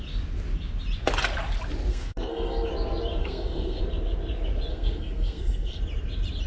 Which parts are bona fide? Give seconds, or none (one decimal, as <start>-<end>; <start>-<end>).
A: 0.0-1.9; 2.7-3.2; 3.8-4.7; 5.8-6.5